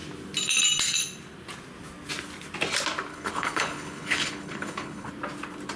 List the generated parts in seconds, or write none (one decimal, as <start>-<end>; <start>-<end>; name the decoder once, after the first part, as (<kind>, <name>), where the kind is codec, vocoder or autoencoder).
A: 3.1-5.1 (codec, HILCodec)